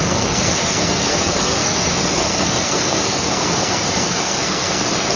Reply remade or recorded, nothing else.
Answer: remade